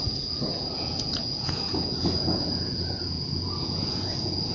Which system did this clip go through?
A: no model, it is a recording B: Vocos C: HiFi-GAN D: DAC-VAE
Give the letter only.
B